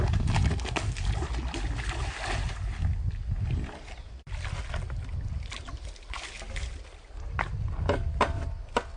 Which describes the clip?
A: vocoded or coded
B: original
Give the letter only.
B